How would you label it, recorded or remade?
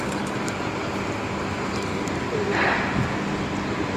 recorded